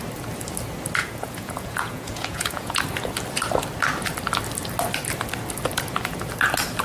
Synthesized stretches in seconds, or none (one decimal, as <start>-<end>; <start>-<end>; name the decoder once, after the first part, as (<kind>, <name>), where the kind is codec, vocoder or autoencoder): 1.0-2.8 (vocoder, Vocos)